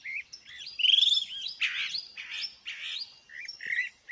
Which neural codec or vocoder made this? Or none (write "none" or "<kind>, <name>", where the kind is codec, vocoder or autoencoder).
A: none